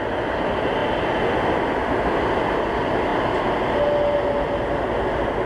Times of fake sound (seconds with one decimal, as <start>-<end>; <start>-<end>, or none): none